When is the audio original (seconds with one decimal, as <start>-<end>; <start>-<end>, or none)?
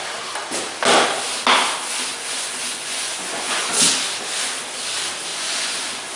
0.0-2.1; 3.7-5.3